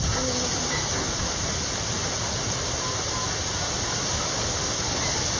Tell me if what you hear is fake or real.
real